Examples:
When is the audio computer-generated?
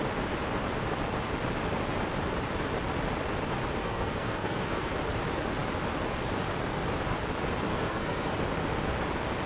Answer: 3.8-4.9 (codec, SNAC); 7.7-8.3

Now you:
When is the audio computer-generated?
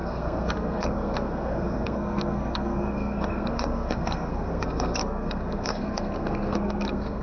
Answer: 0.0-7.2 (codec, SNAC)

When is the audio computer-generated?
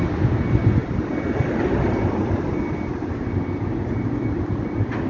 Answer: none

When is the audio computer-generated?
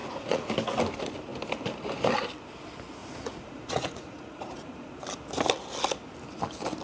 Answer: 0.0-0.5 (vocoder, Vocos); 3.0-4.9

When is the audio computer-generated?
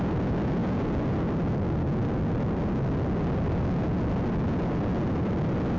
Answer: none